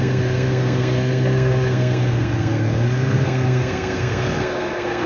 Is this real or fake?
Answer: fake